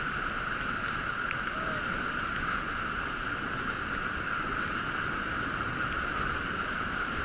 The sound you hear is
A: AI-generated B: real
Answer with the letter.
B